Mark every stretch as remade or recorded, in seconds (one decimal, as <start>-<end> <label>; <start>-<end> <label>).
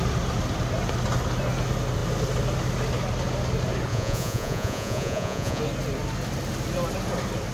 0.0-3.9 recorded; 3.9-5.6 remade; 5.6-7.5 recorded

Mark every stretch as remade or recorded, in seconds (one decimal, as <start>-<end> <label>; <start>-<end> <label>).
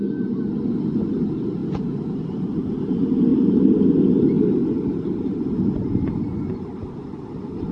0.0-7.7 recorded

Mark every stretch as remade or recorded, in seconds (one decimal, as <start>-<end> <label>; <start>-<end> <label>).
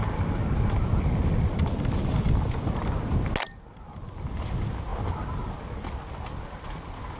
0.0-7.2 recorded